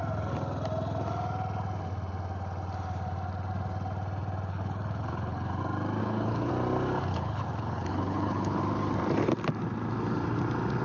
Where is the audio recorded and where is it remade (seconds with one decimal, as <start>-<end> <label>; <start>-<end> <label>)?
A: 0.0-4.5 recorded; 4.5-5.6 remade; 5.6-6.0 recorded; 6.0-6.5 remade; 6.5-7.1 recorded; 7.1-8.6 remade; 8.6-10.8 recorded